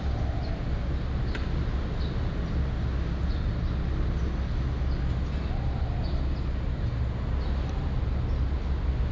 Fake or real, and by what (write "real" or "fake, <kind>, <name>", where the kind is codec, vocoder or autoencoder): real